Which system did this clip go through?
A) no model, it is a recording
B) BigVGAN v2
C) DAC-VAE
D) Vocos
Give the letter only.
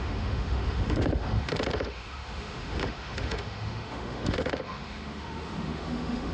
C